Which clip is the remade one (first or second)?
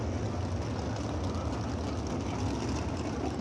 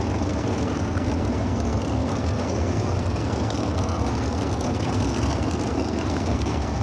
second